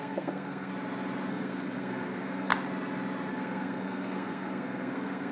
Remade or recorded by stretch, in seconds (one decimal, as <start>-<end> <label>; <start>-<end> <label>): 0.0-0.7 remade; 0.7-1.3 recorded; 1.3-2.5 remade; 2.5-3.3 recorded; 3.3-5.3 remade